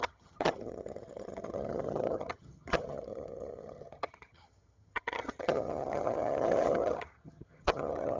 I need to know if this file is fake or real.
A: fake